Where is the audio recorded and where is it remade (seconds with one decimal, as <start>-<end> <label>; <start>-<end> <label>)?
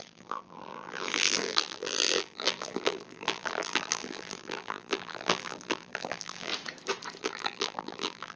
0.0-6.5 remade; 6.5-7.2 recorded; 7.2-8.4 remade